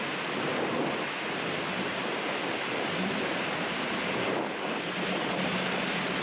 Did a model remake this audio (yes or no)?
no